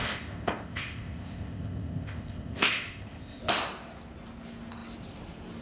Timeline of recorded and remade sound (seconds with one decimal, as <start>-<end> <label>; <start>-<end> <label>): 0.0-3.4 remade; 3.4-5.6 recorded